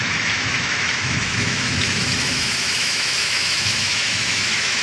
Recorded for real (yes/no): no